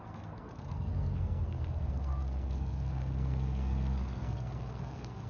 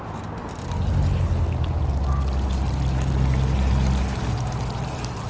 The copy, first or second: first